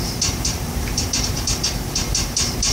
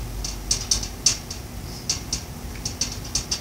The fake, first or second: first